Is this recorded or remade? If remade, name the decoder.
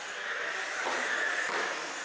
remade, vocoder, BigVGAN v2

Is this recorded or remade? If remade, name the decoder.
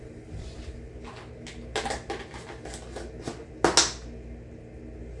recorded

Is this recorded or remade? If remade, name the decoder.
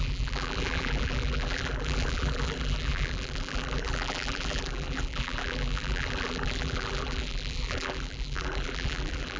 remade, vocoder, BigVGAN v2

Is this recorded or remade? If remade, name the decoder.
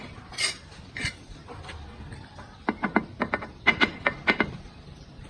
remade, vocoder, BigVGAN v2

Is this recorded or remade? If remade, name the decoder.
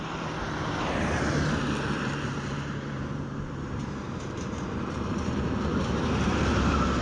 remade, vocoder, BigVGAN v2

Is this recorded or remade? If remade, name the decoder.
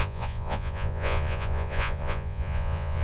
remade, vocoder, Vocos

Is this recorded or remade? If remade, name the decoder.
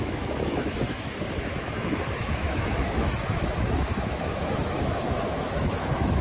remade, autoencoder, DAC-VAE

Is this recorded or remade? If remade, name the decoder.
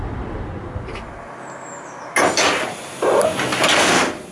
recorded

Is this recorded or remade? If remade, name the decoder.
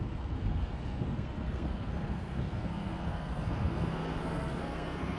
remade, codec, SNAC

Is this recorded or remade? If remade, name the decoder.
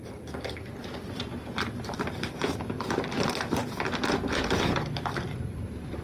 remade, vocoder, BigVGAN v2